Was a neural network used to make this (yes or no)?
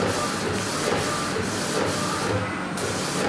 no